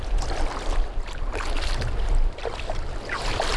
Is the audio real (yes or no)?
yes